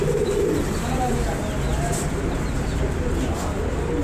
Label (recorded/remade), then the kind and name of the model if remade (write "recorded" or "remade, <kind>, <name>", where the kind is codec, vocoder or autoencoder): recorded